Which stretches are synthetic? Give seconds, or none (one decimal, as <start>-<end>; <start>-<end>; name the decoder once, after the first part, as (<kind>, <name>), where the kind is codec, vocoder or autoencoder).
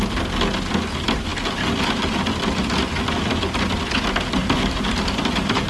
4.4-5.7 (vocoder, BigVGAN v2)